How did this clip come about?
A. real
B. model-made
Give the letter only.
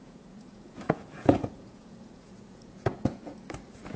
B